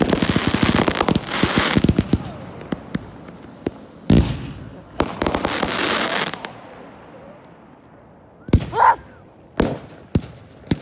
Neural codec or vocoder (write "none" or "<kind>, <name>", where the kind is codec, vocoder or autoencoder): none